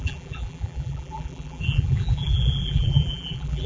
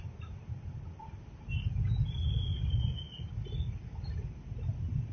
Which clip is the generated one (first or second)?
first